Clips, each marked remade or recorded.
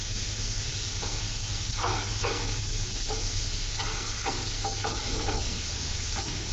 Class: remade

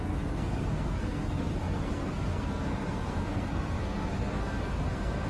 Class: remade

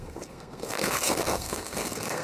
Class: remade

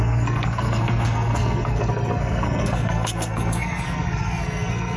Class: remade